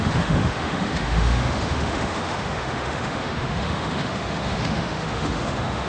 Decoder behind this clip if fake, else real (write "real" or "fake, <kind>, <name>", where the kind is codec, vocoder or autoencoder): fake, autoencoder, DAC-VAE